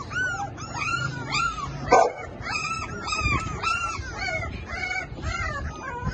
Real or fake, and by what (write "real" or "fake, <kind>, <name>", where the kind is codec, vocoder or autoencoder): fake, vocoder, BigVGAN v2